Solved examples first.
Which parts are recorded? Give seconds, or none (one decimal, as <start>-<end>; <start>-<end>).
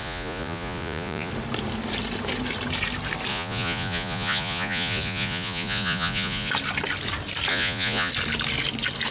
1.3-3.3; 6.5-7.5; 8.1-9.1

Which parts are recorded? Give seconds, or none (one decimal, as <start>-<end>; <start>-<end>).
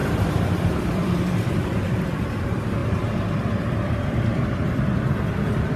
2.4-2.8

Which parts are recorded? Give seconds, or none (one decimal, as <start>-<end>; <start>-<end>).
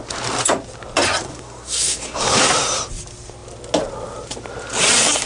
0.0-1.3; 2.2-5.3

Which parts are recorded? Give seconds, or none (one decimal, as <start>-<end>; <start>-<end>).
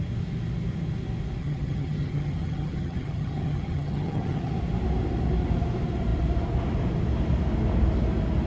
0.0-1.4; 4.5-8.5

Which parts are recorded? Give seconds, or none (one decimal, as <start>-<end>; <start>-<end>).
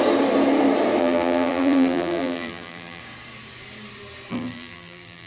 0.0-1.0; 3.0-4.3